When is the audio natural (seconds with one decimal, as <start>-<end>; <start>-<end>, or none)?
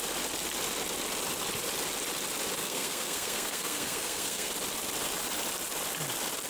0.0-2.6; 4.5-6.5